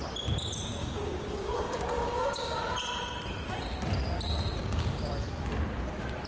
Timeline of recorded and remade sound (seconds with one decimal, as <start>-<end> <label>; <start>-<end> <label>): 0.0-0.8 recorded; 0.8-2.6 remade; 2.6-4.6 recorded; 4.6-5.1 remade; 5.1-6.3 recorded